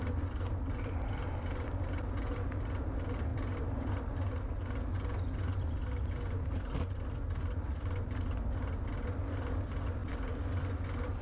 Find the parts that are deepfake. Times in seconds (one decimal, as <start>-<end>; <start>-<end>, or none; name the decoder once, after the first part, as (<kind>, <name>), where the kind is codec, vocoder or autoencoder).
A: none